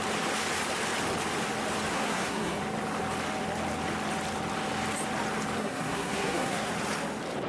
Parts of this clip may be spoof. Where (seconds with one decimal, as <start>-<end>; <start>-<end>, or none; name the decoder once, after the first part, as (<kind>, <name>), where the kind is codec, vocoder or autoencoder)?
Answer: 1.9-2.6 (codec, SNAC); 5.6-6.7